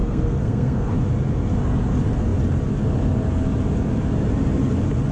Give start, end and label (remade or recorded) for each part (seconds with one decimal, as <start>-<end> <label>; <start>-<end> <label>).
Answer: 0.0-0.9 remade; 0.9-5.1 recorded